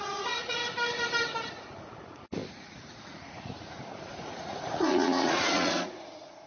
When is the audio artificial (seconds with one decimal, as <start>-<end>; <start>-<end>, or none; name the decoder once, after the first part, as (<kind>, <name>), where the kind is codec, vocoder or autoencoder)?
0.0-0.6 (vocoder, Vocos); 1.5-6.5